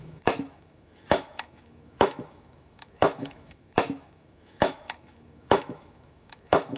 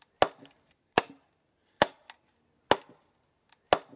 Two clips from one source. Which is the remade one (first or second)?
first